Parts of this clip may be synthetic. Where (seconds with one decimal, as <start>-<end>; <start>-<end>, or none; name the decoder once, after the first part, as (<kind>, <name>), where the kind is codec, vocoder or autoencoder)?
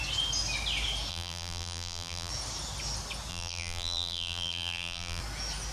1.1-2.3 (vocoder, BigVGAN v2); 3.3-5.2